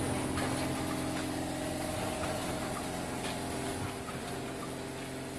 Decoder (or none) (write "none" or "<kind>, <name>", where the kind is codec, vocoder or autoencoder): none